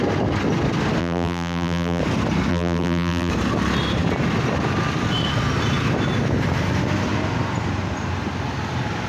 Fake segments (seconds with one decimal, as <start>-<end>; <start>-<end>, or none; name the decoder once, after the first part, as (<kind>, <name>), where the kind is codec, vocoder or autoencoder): 1.0-2.0 (vocoder, BigVGAN v2); 2.5-3.3